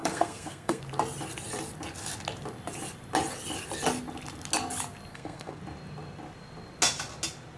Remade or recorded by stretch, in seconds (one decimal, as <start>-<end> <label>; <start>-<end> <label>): 0.0-0.8 remade; 0.8-5.1 recorded; 5.1-5.6 remade; 5.6-7.6 recorded